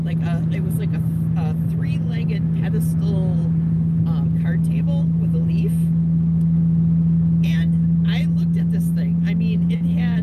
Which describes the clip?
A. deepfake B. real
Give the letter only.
B